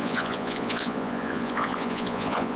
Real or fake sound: fake